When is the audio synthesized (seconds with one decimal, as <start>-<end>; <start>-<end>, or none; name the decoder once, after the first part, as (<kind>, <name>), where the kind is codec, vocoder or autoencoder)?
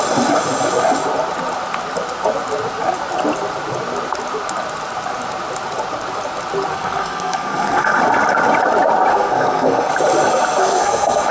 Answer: 6.7-8.0 (codec, SNAC); 9.1-9.9; 10.6-11.3